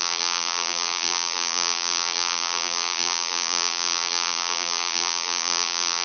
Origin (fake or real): fake